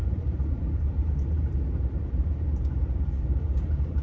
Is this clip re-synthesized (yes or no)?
yes